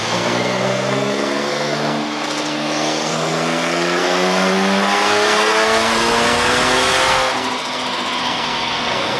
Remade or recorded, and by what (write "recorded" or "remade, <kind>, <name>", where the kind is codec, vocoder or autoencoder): remade, codec, SNAC